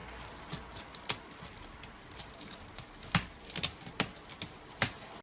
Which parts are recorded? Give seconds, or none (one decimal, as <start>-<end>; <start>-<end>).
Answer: 0.0-5.2